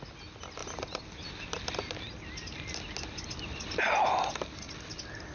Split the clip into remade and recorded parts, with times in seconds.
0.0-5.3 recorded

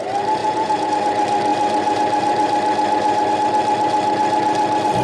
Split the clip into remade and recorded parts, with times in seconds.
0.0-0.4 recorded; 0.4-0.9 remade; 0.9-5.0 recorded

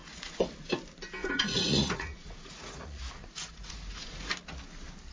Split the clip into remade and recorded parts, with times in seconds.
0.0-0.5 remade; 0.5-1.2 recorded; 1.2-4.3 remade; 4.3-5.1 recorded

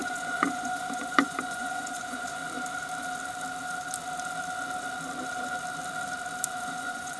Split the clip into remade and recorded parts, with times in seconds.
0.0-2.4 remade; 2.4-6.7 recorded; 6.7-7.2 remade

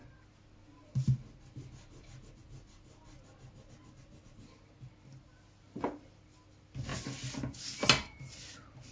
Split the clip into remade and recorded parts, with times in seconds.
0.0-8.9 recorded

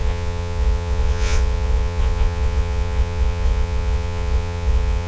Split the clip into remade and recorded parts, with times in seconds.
0.0-5.1 remade